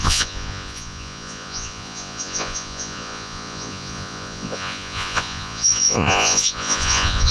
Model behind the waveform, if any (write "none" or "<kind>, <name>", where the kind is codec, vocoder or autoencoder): vocoder, Vocos